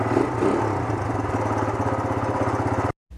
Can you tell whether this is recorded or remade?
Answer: recorded